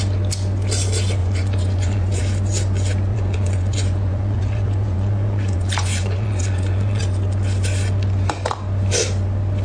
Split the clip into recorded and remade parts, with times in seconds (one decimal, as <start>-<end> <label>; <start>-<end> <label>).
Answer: 0.0-1.2 recorded; 1.2-2.2 remade; 2.2-3.1 recorded; 3.1-7.0 remade; 7.0-9.6 recorded